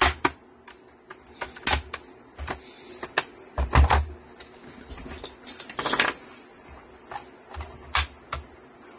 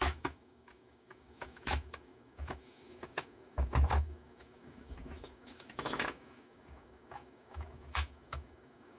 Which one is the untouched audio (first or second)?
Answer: first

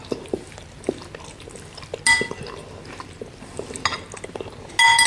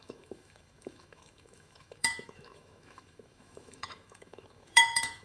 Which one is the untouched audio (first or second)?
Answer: first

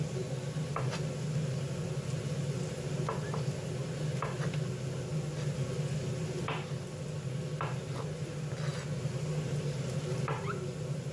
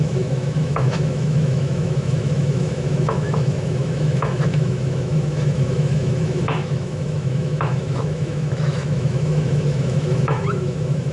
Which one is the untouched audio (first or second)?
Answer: first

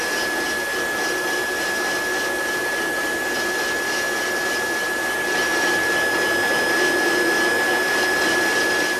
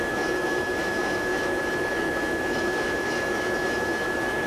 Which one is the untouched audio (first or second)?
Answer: first